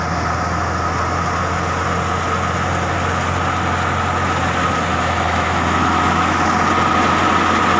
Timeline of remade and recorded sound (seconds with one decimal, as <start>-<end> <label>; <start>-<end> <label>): 0.0-4.9 recorded; 4.9-6.4 remade; 6.4-7.8 recorded